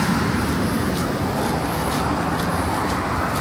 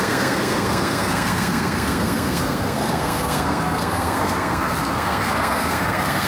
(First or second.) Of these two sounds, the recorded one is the first